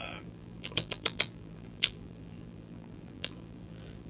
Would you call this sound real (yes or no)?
no